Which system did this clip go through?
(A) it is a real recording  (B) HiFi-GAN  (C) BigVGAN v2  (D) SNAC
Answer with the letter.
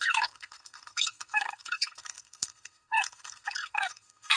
D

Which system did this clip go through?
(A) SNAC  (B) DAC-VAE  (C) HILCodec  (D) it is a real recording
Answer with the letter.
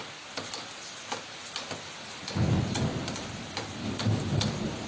D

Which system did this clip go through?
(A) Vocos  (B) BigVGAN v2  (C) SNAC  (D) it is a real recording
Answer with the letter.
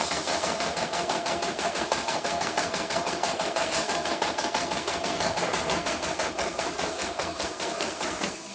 C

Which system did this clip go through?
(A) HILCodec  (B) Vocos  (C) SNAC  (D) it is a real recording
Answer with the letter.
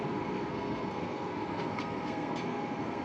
C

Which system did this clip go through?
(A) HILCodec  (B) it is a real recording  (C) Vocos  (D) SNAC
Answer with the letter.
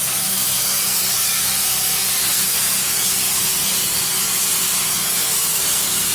D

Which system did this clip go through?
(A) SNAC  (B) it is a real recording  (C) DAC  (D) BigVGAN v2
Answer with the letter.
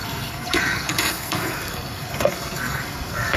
A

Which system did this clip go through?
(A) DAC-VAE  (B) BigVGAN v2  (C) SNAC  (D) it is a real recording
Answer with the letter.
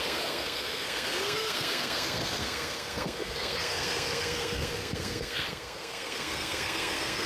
C